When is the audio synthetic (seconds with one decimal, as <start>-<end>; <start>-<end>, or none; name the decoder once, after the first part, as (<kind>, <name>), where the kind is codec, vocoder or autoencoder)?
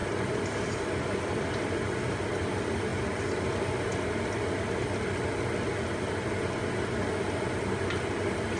0.0-1.5 (vocoder, BigVGAN v2)